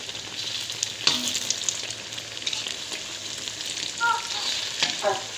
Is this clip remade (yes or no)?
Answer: no